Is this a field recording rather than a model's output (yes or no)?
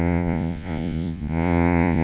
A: no